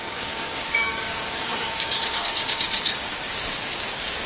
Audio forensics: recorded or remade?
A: remade